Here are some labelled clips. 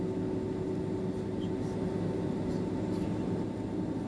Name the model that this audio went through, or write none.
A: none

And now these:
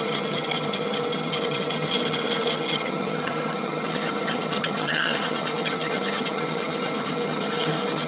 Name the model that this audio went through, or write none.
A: vocoder, HiFi-GAN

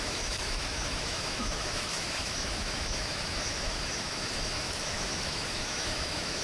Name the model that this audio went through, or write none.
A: autoencoder, DAC-VAE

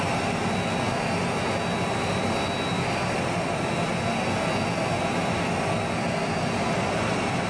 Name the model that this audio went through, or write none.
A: none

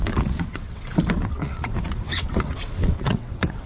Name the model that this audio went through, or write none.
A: vocoder, WaveNeXt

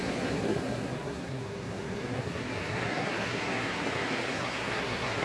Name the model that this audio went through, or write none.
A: codec, SNAC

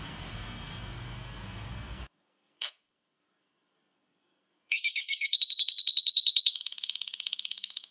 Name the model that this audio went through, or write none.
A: codec, SNAC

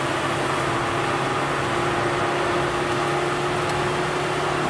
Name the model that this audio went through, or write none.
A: none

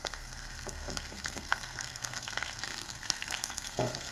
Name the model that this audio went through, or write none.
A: codec, SNAC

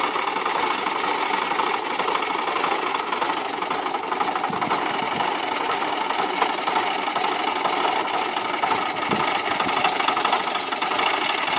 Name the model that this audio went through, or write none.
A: none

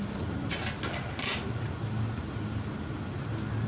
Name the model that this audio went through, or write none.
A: none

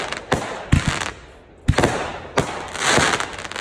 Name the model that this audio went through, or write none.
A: none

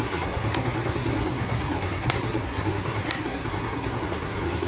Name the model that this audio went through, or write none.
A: codec, SNAC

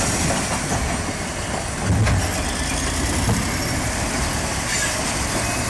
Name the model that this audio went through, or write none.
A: none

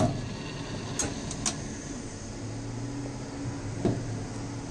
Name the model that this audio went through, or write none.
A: none